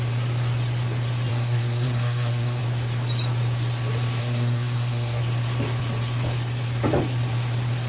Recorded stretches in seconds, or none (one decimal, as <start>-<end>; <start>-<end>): 0.0-1.3; 2.6-4.2; 5.2-7.9